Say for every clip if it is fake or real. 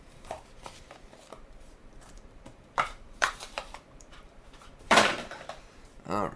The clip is fake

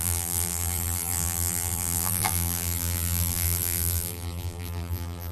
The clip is fake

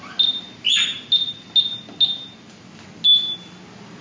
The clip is real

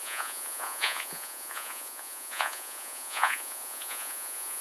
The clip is fake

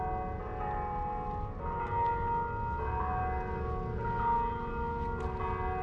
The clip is real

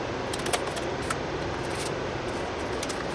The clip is fake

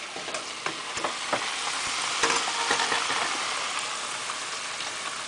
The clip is real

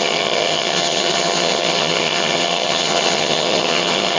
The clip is fake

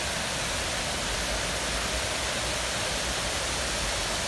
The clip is real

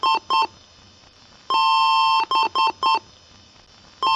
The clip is real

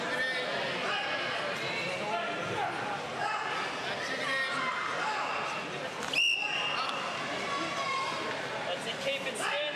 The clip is real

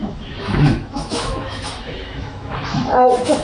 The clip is fake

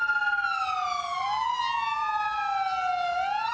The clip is real